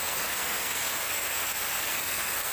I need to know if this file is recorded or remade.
remade